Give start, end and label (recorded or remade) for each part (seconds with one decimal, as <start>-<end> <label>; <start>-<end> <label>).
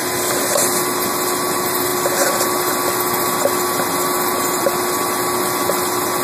0.0-1.9 recorded; 1.9-2.6 remade; 2.6-4.0 recorded; 4.0-4.9 remade; 4.9-6.2 recorded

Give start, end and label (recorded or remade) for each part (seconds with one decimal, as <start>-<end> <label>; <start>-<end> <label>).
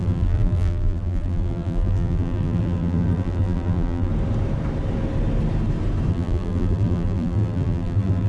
0.0-4.1 remade; 4.1-6.1 recorded; 6.1-8.3 remade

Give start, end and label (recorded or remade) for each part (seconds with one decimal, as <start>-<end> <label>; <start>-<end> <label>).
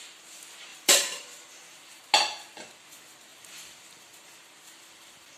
0.0-0.7 recorded; 0.7-2.0 remade; 2.0-5.4 recorded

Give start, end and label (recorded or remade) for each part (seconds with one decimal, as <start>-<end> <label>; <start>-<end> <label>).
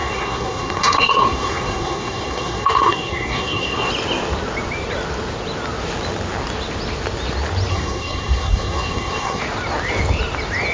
0.0-3.9 remade; 3.9-7.7 recorded; 7.7-9.4 remade; 9.4-10.7 recorded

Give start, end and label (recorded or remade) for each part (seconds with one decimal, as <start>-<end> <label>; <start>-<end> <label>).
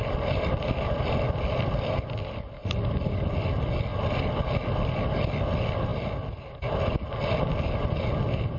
0.0-8.6 recorded